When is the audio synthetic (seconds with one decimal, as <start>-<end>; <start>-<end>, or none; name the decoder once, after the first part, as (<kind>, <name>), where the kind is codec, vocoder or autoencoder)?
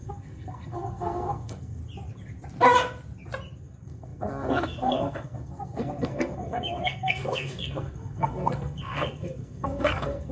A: 0.0-1.8 (codec, SNAC); 3.6-10.3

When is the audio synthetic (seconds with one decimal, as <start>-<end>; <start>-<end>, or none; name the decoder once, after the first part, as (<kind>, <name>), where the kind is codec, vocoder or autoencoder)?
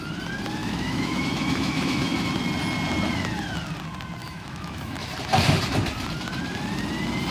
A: 0.6-2.3 (autoencoder, DAC-VAE); 4.2-5.1